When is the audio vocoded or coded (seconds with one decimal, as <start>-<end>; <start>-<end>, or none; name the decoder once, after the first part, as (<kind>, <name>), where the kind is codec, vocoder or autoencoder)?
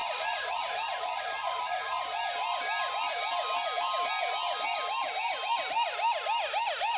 0.0-2.0 (vocoder, Vocos)